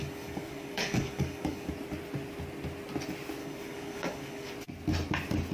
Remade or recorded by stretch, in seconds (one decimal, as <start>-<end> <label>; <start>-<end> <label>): 0.0-1.7 remade; 1.7-3.4 recorded; 3.4-4.5 remade; 4.5-5.5 recorded